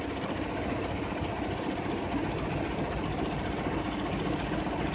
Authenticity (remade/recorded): recorded